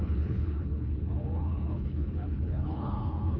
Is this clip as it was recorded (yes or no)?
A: no